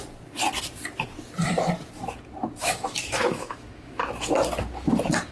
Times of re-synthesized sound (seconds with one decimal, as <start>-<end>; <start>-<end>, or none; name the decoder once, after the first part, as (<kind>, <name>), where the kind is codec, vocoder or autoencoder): 2.6-4.0 (autoencoder, DAC-VAE)